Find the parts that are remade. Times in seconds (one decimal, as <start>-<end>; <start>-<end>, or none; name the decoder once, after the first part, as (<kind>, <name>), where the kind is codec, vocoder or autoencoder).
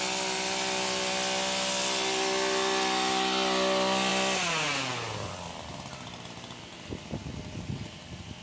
none